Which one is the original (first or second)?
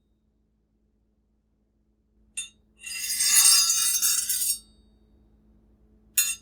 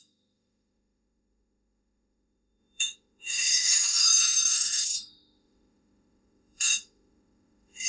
first